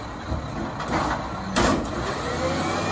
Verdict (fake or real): real